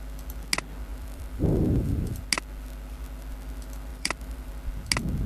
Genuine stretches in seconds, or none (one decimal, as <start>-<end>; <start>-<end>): 0.0-0.9; 2.2-3.9; 4.5-5.3